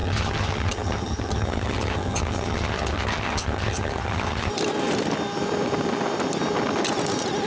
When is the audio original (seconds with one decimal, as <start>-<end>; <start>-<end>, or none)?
4.5-7.5